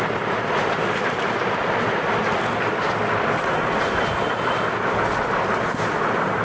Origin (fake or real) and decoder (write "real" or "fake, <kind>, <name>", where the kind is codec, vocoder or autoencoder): real